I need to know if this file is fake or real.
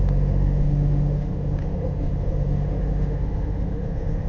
fake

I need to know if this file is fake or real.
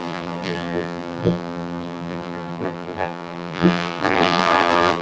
fake